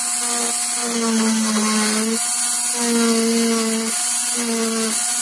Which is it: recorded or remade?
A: recorded